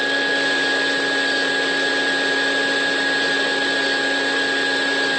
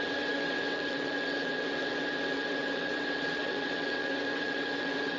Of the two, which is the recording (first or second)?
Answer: first